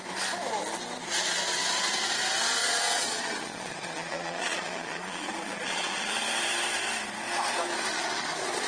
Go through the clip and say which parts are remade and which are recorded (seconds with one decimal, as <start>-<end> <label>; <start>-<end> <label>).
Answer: 0.0-2.6 recorded; 2.6-6.1 remade; 6.1-7.9 recorded; 7.9-8.7 remade